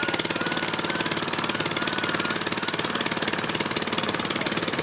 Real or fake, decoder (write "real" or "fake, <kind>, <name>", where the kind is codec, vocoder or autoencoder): real